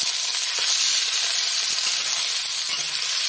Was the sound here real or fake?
real